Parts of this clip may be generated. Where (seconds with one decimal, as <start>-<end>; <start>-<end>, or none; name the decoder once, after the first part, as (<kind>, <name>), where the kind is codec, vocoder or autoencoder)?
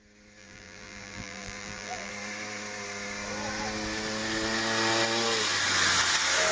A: 0.4-2.1 (vocoder, BigVGAN v2)